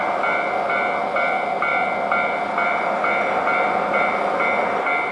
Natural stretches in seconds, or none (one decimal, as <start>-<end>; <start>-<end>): 0.0-5.1